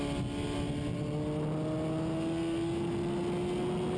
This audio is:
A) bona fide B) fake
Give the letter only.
A